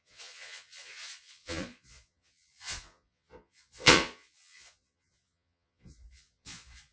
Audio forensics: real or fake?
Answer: fake